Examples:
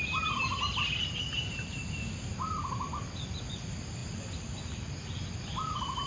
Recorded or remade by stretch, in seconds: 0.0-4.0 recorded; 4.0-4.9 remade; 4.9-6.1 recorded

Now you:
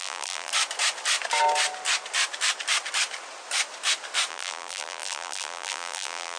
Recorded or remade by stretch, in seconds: 0.0-0.5 remade; 0.5-4.3 recorded; 4.3-6.4 remade

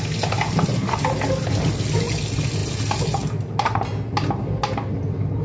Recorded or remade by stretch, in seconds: 0.0-5.4 recorded